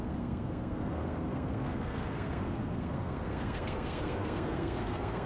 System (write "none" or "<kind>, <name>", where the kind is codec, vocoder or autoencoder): codec, SNAC